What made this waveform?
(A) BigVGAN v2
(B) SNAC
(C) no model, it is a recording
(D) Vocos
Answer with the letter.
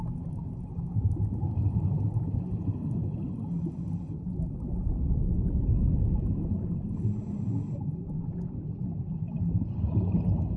C